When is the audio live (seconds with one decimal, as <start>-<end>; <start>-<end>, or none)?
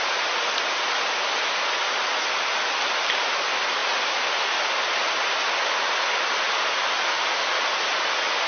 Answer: 0.0-8.5